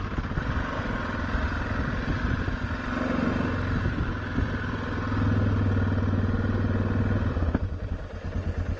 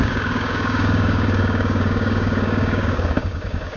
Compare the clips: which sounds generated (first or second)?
second